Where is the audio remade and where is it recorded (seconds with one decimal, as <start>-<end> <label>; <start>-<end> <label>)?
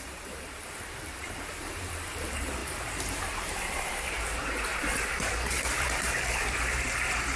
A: 0.0-7.4 remade